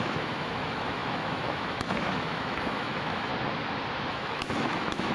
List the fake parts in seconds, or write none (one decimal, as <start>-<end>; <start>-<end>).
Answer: 0.0-3.3; 4.1-5.1